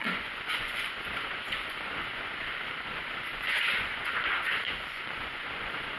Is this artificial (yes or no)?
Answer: yes